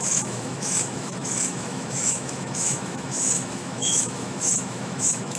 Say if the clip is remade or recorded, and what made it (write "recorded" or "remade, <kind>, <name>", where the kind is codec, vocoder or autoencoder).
remade, autoencoder, DAC-VAE